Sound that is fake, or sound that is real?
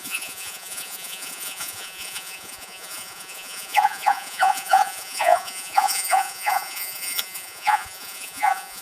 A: fake